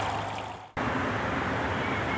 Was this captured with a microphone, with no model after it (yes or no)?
yes